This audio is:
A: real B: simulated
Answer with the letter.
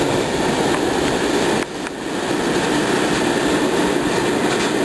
A